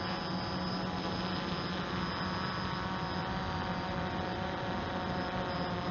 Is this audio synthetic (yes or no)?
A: no